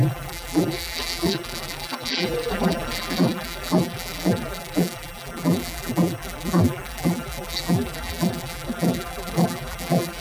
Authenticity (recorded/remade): remade